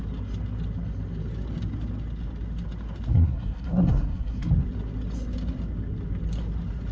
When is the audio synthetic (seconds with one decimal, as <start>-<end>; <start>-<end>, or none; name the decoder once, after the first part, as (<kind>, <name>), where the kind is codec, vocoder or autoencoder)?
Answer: 3.1-4.5 (codec, SNAC)